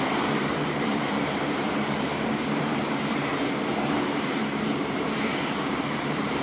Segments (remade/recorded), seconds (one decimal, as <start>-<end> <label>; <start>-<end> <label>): 0.0-6.4 remade